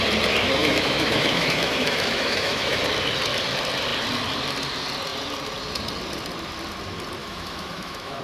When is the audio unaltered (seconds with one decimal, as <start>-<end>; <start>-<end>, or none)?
0.0-0.6; 2.8-7.2